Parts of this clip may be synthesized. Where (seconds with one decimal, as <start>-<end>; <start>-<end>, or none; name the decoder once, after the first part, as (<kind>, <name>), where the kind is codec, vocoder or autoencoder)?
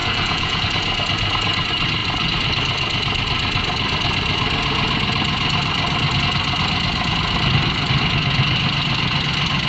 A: 0.0-0.6 (vocoder, Vocos)